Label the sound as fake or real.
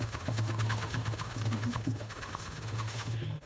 fake